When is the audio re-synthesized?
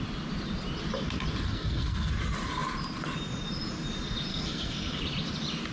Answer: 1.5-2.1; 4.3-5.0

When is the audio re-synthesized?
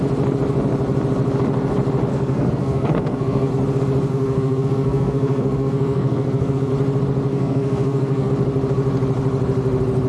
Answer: 2.1-3.5; 4.1-6.7; 7.3-8.3